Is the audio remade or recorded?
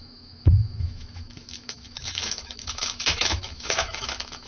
remade